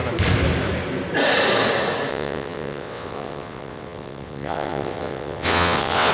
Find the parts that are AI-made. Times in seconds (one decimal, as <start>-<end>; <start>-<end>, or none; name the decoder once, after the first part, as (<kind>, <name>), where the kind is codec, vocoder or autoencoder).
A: 2.1-6.1 (vocoder, WaveNeXt)